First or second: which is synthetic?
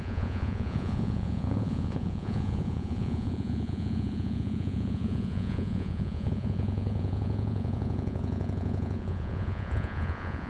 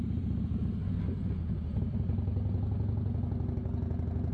first